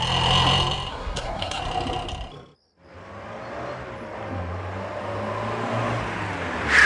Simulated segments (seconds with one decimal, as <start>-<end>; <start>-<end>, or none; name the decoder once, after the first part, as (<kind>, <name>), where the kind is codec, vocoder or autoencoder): 0.9-1.6 (codec, SNAC)